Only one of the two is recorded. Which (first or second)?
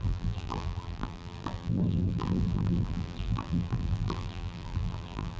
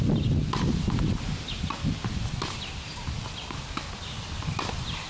second